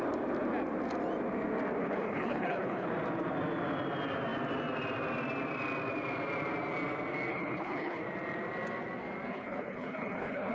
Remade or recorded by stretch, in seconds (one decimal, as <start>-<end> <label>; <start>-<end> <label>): 0.0-1.8 recorded; 1.8-2.9 remade; 2.9-7.3 recorded; 7.3-8.0 remade; 8.0-9.3 recorded; 9.3-10.5 remade